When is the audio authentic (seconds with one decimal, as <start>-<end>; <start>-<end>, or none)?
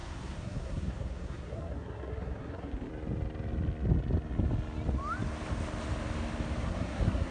2.9-6.6